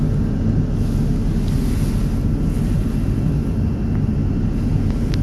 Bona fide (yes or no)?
yes